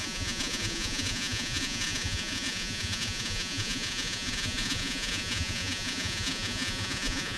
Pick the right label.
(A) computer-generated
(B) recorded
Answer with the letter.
A